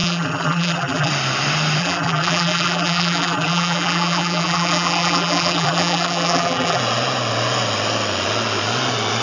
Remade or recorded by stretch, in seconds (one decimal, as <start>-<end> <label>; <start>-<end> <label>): 0.0-1.1 remade; 1.1-1.8 recorded; 1.8-6.8 remade; 6.8-9.2 recorded